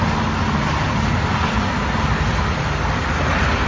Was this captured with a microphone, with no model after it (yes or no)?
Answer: yes